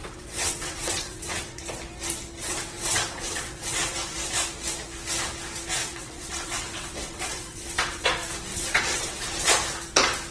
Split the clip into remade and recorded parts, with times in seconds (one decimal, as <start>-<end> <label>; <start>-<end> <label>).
0.0-1.6 remade; 1.6-2.4 recorded; 2.4-3.9 remade; 3.9-5.8 recorded; 5.8-8.0 remade; 8.0-8.5 recorded; 8.5-9.5 remade; 9.5-10.3 recorded